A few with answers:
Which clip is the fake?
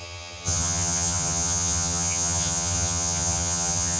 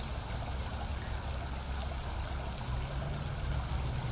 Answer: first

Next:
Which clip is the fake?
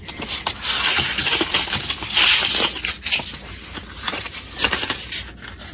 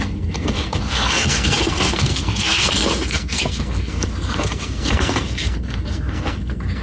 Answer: second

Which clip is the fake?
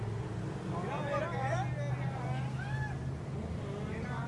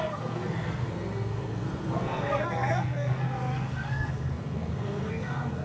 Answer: second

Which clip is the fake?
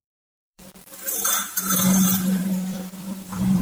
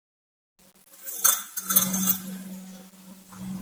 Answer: first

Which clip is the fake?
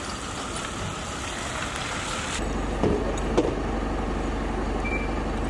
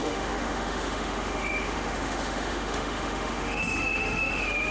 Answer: second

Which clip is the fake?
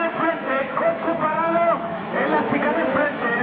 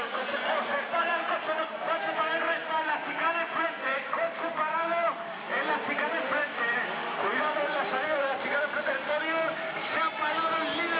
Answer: first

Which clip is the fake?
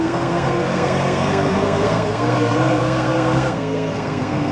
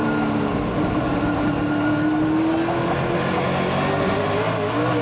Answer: first